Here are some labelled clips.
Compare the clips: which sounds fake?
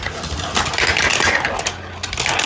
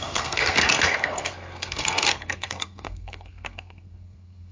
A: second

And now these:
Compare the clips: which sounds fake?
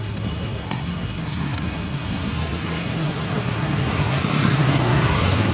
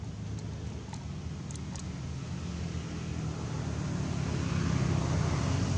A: first